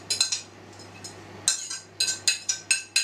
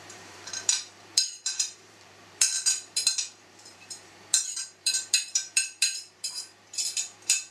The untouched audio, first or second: first